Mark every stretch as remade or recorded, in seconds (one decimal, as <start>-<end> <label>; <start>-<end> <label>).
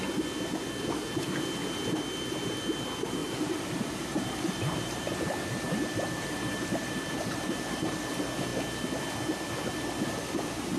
0.0-3.2 recorded; 3.2-8.0 remade; 8.0-10.8 recorded